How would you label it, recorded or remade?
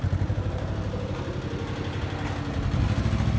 recorded